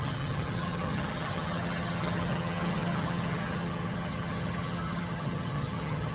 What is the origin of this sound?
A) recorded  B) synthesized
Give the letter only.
B